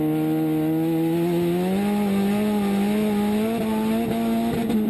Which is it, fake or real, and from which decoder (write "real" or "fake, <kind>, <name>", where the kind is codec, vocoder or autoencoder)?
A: real